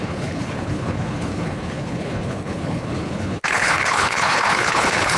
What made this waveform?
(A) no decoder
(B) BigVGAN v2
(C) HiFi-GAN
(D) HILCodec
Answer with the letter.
D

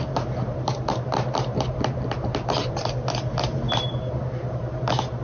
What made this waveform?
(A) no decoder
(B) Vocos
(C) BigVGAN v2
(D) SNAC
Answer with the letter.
C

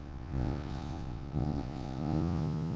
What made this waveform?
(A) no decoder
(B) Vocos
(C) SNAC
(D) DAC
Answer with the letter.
B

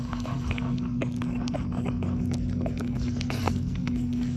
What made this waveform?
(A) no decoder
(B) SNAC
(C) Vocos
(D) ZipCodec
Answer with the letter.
B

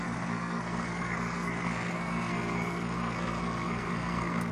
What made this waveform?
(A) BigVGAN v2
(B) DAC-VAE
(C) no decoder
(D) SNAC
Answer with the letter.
D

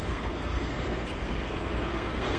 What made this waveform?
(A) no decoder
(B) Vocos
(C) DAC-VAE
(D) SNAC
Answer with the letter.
D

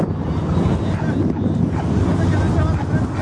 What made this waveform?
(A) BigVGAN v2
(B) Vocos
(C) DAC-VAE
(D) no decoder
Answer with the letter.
D